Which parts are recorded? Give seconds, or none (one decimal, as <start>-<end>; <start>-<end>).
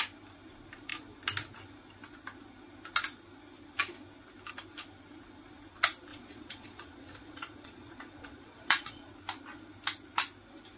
0.0-6.1; 9.1-10.8